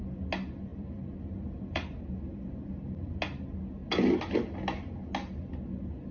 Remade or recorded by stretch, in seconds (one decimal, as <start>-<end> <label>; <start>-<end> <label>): 0.0-0.7 recorded; 0.7-2.8 remade; 2.8-6.1 recorded